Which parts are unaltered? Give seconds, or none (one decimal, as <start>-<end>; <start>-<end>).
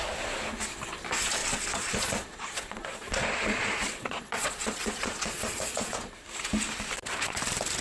0.0-1.4; 6.1-7.8